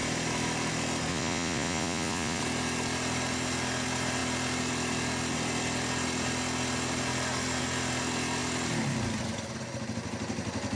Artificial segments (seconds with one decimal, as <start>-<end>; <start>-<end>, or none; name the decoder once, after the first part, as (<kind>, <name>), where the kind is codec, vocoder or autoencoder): 1.1-2.4 (vocoder, Vocos)